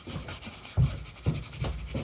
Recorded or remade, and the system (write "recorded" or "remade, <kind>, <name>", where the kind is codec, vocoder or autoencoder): recorded